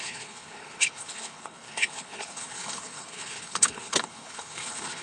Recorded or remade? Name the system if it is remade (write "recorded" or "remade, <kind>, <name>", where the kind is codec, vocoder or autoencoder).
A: remade, codec, HILCodec